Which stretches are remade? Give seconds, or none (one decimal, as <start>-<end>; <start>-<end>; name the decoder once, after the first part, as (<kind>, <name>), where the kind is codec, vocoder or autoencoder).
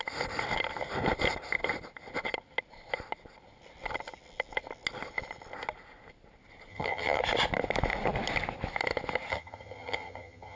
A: 6.7-7.2 (vocoder, HiFi-GAN); 9.3-10.6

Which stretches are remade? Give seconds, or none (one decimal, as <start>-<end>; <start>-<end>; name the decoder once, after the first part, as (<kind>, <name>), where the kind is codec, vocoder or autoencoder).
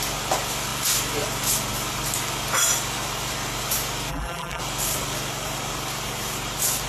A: 4.1-4.6 (vocoder, BigVGAN v2)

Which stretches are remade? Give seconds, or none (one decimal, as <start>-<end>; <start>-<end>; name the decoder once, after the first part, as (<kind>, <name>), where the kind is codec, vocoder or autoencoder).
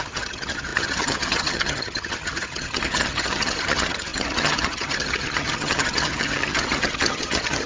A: 0.0-7.7 (vocoder, HiFi-GAN)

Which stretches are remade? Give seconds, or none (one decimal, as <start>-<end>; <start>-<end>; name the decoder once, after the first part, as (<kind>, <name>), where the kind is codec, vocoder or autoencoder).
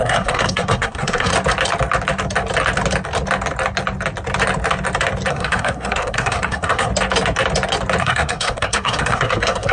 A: 0.0-1.3 (codec, SNAC); 5.3-6.9; 8.0-9.7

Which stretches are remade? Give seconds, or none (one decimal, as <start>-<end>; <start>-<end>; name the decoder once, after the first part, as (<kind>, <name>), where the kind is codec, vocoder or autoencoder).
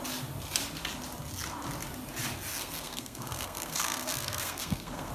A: 2.5-5.1 (codec, SNAC)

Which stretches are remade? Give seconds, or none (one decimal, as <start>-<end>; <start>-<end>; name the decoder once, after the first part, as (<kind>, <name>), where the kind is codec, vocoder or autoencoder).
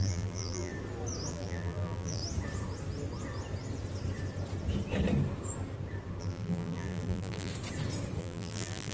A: 0.0-0.7 (vocoder, BigVGAN v2); 1.3-2.2; 6.2-7.5; 8.2-8.9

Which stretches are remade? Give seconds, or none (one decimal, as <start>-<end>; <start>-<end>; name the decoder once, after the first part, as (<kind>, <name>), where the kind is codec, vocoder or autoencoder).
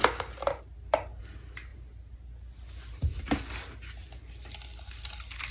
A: none